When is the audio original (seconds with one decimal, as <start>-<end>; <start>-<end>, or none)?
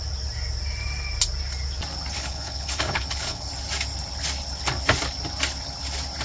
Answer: 0.0-2.2; 3.5-6.2